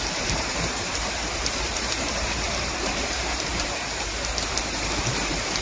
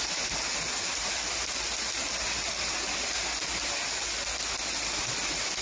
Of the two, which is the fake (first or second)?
first